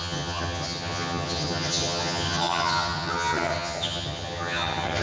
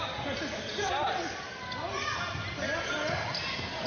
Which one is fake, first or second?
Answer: first